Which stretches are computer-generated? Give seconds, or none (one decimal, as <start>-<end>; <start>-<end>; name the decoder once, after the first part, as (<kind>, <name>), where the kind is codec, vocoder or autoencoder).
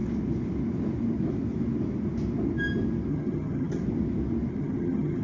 3.1-3.8 (vocoder, HiFi-GAN); 4.5-5.2